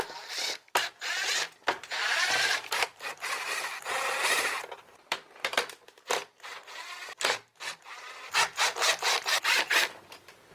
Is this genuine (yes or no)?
no